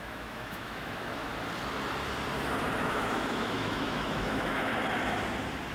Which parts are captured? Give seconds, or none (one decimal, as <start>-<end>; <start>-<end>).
1.3-2.8; 4.7-5.7